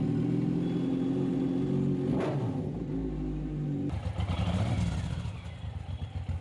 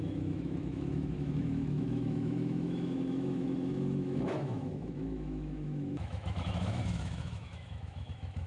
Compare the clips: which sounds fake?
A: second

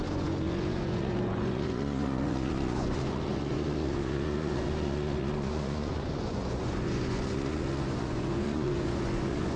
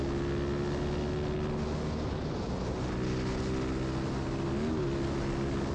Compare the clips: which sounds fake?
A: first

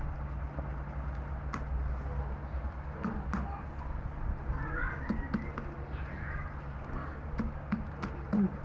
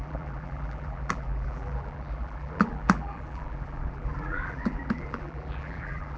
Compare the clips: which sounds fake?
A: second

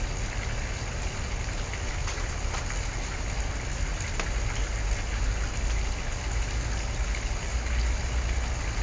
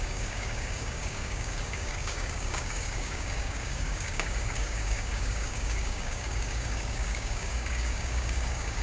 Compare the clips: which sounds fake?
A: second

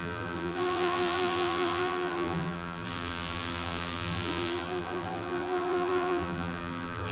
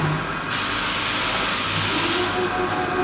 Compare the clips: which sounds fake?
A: first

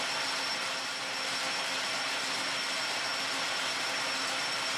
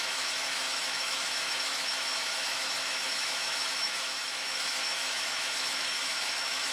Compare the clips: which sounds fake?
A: second